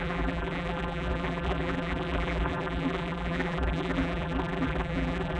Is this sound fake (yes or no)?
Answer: yes